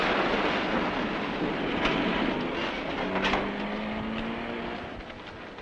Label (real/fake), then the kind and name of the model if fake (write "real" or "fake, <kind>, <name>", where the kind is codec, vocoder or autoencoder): real